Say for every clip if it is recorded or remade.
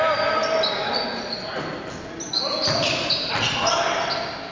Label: recorded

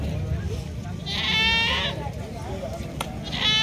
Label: recorded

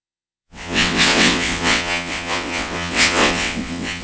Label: remade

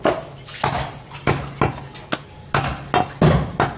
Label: recorded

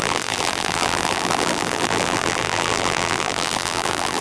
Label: remade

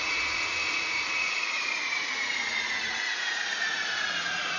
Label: remade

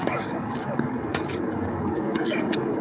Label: remade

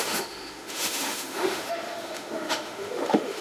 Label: remade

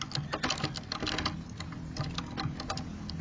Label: recorded